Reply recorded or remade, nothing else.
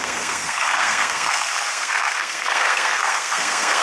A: remade